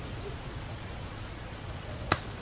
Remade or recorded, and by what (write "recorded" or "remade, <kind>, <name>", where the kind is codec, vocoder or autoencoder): remade, vocoder, Vocos